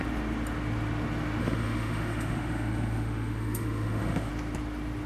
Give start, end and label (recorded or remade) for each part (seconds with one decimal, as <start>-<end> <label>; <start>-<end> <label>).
0.0-1.4 recorded; 1.4-4.3 remade; 4.3-5.1 recorded